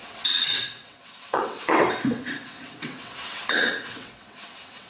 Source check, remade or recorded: remade